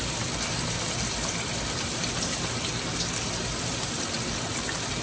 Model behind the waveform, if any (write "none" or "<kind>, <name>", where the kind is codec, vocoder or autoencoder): none